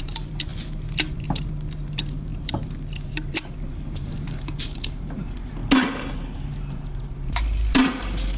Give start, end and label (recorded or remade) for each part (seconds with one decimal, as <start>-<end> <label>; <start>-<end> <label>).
0.0-5.6 remade; 5.6-6.5 recorded; 6.5-8.4 remade